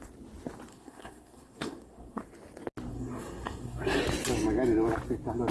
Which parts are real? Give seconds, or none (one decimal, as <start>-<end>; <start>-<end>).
0.0-0.7; 2.2-2.9; 4.0-5.5